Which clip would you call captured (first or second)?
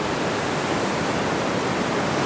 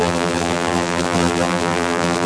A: first